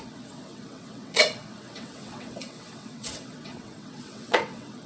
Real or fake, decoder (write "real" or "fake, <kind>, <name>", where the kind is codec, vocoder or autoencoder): fake, vocoder, WaveNeXt